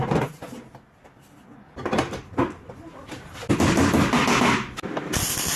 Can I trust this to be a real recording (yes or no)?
yes